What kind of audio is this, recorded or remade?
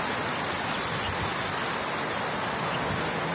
recorded